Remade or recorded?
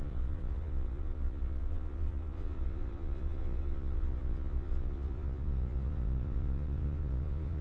remade